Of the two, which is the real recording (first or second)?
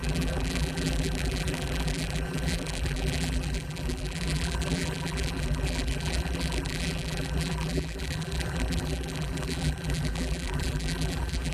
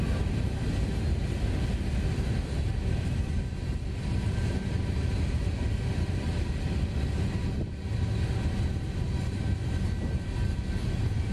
second